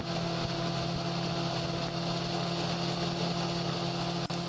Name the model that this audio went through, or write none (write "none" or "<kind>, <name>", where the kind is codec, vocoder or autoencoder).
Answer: none